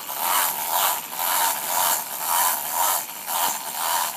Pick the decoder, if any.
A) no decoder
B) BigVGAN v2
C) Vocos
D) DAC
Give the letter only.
A